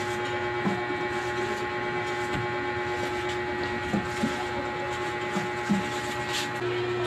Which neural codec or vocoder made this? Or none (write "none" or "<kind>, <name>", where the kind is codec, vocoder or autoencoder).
none